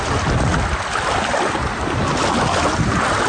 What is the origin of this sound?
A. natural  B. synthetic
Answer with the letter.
A